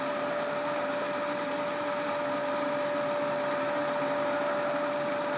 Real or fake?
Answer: real